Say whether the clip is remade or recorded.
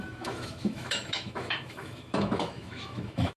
remade